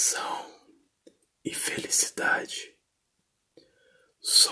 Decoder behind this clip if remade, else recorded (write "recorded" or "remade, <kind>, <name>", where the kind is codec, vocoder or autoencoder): recorded